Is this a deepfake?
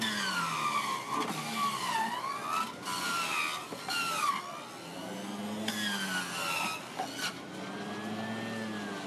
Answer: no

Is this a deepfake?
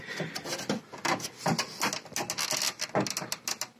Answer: no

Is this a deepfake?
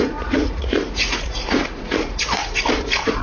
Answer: yes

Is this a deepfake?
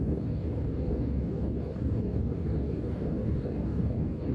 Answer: yes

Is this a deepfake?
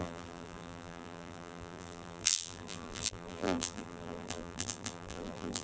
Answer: yes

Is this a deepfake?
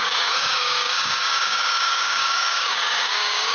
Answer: yes